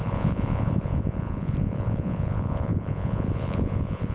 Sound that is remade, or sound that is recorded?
remade